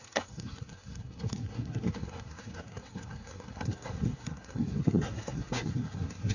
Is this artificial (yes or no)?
yes